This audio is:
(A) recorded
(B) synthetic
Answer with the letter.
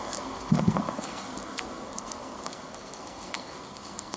B